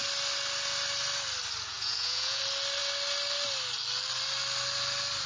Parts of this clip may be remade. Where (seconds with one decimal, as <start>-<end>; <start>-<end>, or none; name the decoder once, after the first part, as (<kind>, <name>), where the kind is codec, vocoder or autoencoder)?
1.7-2.4 (vocoder, Vocos)